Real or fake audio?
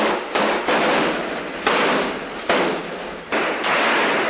real